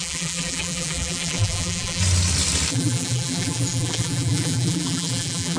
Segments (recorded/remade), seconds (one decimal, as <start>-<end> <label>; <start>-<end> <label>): 0.0-2.0 remade; 2.0-2.7 recorded; 2.7-5.6 remade

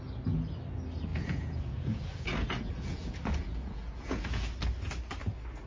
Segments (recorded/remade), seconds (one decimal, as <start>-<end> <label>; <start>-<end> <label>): 0.0-1.1 recorded; 1.1-4.5 remade; 4.5-5.7 recorded